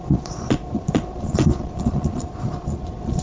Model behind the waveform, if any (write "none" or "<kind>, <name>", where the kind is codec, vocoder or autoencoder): vocoder, Vocos